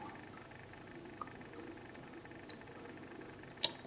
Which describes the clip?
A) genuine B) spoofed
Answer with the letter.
A